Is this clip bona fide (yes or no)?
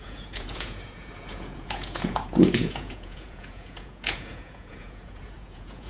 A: no